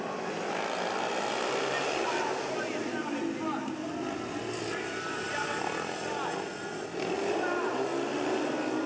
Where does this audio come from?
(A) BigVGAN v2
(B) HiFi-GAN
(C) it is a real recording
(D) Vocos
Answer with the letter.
C